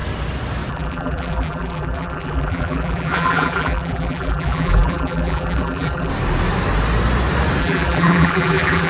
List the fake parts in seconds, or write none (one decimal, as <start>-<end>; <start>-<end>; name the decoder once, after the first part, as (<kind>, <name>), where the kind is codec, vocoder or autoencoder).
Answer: 0.7-6.1 (vocoder, BigVGAN v2); 7.6-8.9